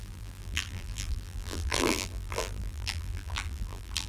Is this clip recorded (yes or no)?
no